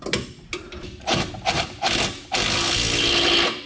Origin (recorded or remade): recorded